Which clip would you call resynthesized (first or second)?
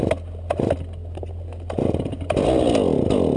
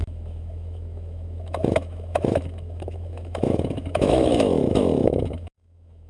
second